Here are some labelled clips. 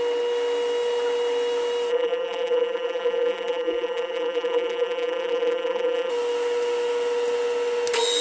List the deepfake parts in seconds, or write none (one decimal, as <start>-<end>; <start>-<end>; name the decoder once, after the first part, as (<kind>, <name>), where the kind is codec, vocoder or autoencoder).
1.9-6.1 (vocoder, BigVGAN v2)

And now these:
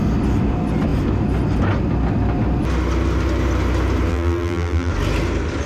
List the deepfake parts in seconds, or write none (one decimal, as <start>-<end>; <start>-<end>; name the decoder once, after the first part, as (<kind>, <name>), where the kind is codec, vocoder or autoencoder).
4.1-4.9 (vocoder, BigVGAN v2)

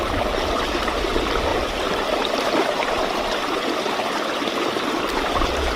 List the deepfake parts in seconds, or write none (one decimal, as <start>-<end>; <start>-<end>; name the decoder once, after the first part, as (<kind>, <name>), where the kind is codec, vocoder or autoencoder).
1.5-3.8 (vocoder, BigVGAN v2)

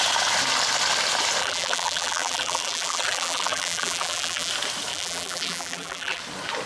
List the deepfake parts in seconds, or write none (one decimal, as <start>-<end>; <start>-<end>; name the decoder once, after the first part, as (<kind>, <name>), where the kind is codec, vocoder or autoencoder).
1.4-4.5 (vocoder, BigVGAN v2); 4.9-6.2

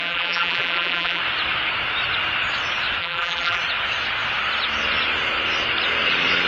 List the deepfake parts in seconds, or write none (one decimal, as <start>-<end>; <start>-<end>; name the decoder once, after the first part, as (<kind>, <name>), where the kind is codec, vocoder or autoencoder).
0.0-1.2 (vocoder, BigVGAN v2); 3.0-3.6

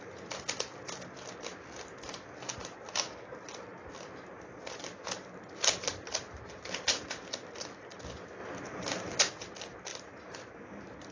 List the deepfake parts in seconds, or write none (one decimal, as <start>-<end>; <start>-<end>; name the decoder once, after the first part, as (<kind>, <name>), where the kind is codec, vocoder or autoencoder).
none

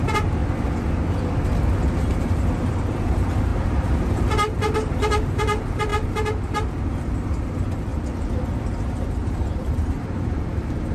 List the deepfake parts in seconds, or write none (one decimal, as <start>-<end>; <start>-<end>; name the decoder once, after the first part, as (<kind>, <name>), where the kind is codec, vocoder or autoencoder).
0.0-0.4 (vocoder, BigVGAN v2); 2.0-7.9; 8.8-10.9